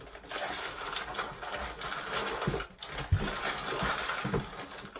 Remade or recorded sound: recorded